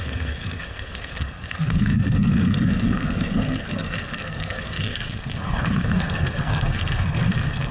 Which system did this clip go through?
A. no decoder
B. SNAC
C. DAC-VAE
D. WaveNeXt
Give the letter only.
B